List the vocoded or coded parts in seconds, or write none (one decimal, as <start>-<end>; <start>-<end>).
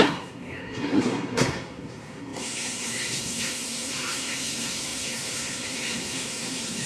0.0-6.9